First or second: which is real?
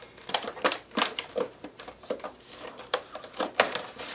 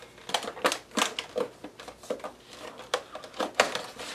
second